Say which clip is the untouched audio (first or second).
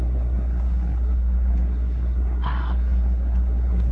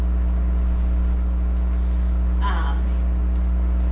second